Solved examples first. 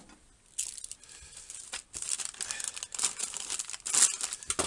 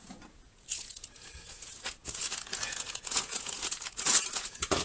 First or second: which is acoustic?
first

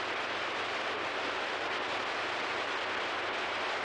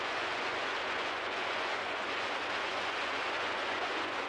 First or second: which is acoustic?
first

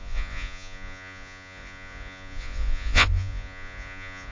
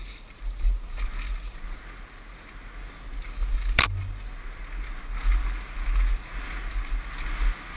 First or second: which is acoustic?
second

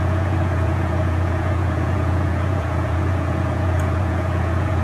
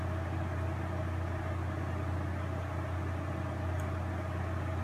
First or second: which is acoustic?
second